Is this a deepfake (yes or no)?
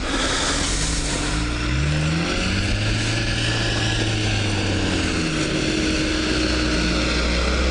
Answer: no